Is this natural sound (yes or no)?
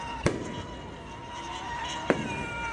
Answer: yes